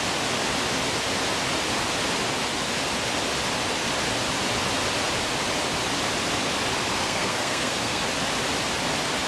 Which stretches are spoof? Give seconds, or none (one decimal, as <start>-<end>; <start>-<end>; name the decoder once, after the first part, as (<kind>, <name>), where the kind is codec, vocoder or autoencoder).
6.9-8.0 (codec, SNAC)